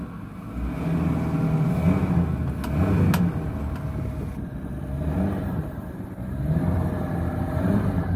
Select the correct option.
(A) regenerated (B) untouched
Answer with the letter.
B